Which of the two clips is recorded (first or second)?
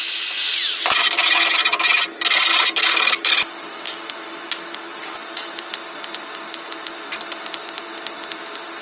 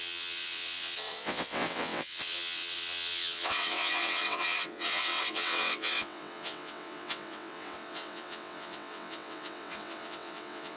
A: first